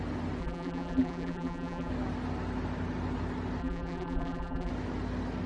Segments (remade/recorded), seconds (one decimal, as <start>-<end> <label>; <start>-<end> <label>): 0.0-0.4 recorded; 0.4-1.9 remade; 1.9-3.6 recorded; 3.6-4.7 remade; 4.7-5.5 recorded